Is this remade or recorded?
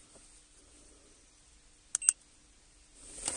recorded